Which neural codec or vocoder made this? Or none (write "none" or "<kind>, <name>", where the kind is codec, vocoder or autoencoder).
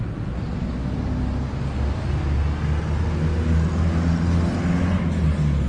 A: none